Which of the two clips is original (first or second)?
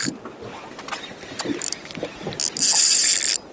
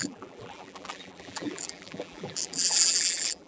first